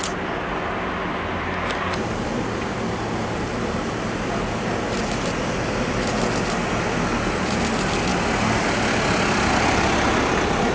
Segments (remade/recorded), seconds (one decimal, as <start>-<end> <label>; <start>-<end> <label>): 0.0-10.7 recorded